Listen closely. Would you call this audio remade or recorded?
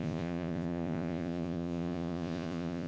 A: remade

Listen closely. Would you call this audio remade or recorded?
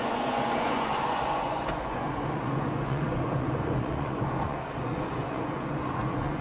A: remade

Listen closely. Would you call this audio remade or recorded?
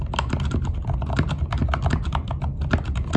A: recorded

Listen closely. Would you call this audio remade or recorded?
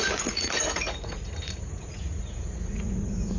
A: remade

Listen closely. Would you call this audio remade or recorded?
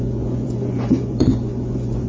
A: remade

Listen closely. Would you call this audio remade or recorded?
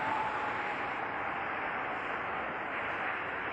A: recorded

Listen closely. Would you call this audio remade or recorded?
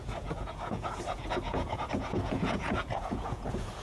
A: remade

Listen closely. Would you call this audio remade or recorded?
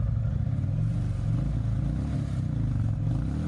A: recorded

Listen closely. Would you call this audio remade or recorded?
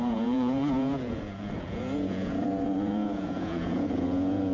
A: remade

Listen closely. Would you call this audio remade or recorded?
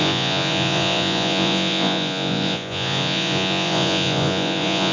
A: remade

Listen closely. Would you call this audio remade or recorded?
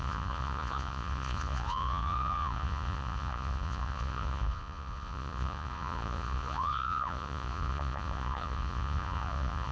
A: remade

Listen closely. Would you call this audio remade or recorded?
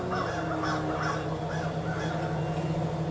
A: recorded